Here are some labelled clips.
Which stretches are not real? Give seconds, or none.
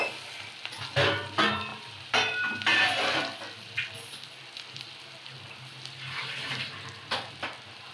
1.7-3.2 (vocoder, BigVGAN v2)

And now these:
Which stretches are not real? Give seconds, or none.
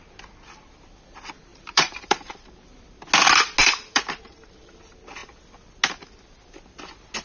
1.5-2.4 (vocoder, BigVGAN v2); 3.6-4.4